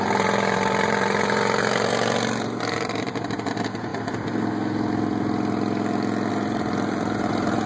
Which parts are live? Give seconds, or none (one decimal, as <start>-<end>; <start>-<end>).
3.9-6.3

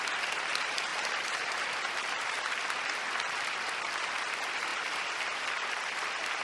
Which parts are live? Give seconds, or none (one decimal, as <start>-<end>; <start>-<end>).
0.0-0.9; 1.6-6.4